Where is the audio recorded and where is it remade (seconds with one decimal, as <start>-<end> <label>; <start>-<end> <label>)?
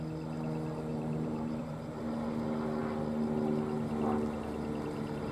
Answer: 0.0-0.9 recorded; 0.9-2.0 remade; 2.0-5.3 recorded